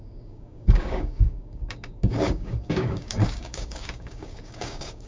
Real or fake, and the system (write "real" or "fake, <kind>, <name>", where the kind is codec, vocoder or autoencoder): fake, codec, DAC